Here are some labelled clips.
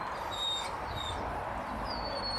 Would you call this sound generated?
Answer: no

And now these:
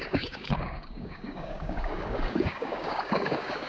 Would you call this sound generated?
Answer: yes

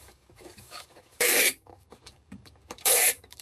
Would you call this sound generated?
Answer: yes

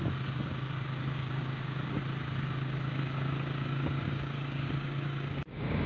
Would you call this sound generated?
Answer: yes